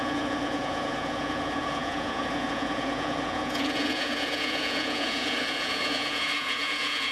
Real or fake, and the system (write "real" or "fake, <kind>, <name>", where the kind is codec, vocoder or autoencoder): fake, vocoder, Vocos